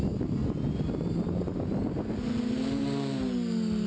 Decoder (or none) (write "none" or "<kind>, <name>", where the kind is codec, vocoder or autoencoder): none